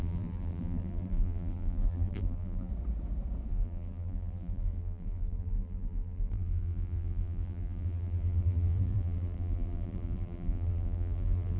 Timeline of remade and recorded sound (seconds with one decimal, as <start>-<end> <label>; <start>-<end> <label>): 0.0-2.7 remade; 2.7-3.5 recorded; 3.5-11.6 remade